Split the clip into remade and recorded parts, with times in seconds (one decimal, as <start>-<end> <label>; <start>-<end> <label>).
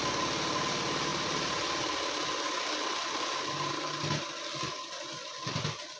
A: 0.0-6.0 recorded